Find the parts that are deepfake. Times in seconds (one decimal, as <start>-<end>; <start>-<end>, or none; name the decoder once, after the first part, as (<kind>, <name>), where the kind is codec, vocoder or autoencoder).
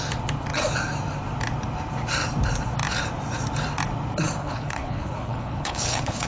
4.4-6.3 (codec, HILCodec)